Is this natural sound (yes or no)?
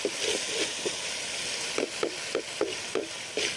yes